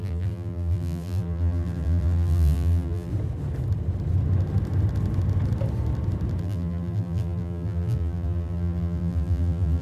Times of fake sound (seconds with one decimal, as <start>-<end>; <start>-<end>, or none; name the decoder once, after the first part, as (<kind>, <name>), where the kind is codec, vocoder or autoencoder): 0.0-3.1 (vocoder, BigVGAN v2); 6.4-9.8